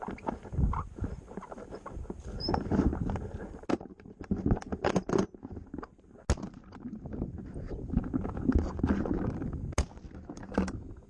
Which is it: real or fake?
real